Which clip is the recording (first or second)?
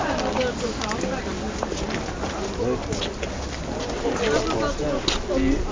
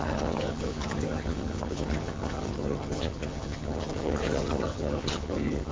first